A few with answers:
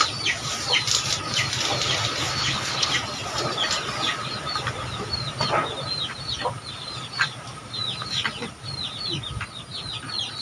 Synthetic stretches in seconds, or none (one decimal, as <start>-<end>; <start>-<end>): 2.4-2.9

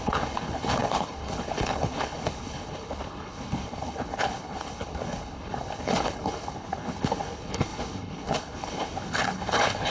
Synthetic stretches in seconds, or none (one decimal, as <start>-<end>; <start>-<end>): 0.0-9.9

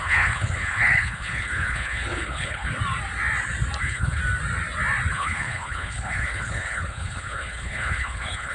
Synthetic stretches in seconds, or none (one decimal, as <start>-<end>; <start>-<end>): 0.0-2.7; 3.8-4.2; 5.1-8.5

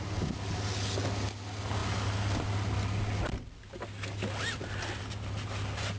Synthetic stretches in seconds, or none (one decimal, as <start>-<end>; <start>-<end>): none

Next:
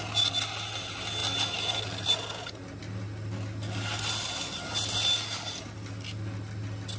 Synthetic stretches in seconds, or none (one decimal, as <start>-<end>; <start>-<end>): none

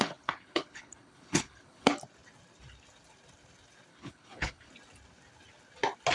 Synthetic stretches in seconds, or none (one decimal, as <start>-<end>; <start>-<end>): 0.0-1.9; 3.9-4.7

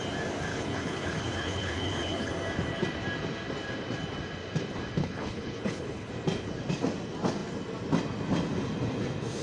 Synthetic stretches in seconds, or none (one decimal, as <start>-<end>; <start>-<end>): 0.5-2.3; 5.0-6.1

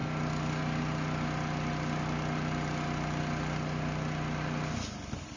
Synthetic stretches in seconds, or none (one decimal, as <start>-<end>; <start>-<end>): none